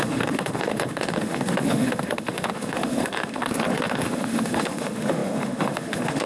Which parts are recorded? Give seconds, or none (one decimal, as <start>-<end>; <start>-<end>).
none